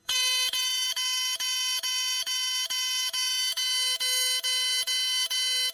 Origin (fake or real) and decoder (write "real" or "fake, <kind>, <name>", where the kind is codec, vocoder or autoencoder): fake, autoencoder, DAC-VAE